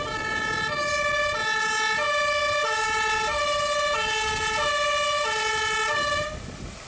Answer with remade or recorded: recorded